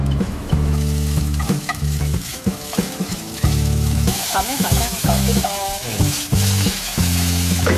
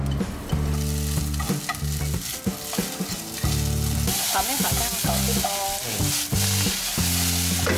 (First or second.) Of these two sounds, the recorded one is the second